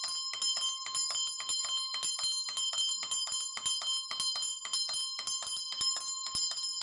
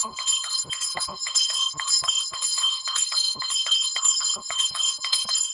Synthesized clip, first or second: second